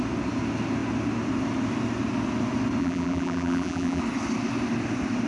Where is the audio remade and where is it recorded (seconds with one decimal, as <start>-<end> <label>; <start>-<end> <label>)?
0.0-2.8 recorded; 2.8-4.0 remade; 4.0-5.3 recorded